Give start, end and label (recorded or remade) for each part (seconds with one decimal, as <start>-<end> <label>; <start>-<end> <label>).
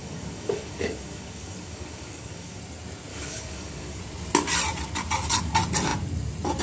0.0-2.6 remade; 2.6-3.1 recorded; 3.1-4.0 remade; 4.0-6.6 recorded